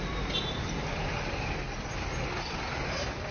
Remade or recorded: recorded